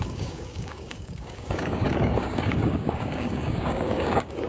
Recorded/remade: remade